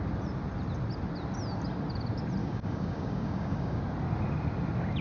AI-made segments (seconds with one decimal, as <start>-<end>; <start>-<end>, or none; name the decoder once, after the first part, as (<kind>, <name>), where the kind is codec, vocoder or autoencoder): 2.4-3.8 (codec, DAC)